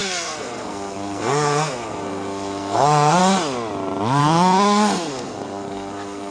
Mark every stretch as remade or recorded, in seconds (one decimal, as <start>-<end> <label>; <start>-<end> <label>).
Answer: 0.0-3.2 remade; 3.2-4.2 recorded; 4.2-6.3 remade